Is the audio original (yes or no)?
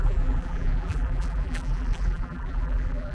no